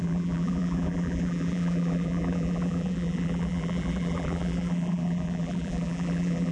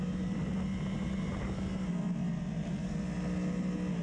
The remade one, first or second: first